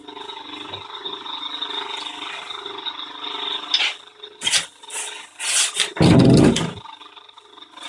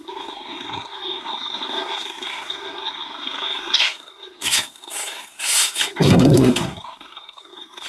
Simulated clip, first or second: second